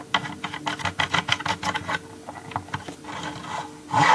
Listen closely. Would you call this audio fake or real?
real